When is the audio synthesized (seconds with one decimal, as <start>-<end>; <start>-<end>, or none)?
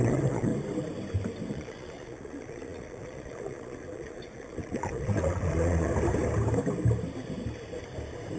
0.0-0.5; 1.5-5.9